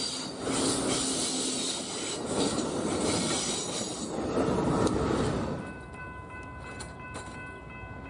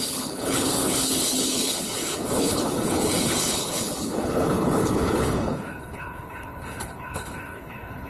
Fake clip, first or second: second